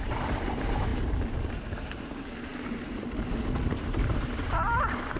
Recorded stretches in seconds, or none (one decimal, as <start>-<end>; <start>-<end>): none